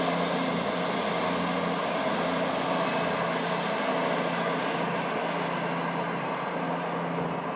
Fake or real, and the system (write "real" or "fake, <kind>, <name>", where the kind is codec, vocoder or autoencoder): real